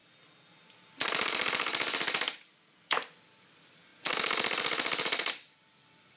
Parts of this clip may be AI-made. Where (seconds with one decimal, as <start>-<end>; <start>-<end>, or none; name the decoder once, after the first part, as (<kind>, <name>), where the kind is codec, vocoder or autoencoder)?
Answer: 2.9-3.9 (vocoder, BigVGAN v2); 5.3-6.2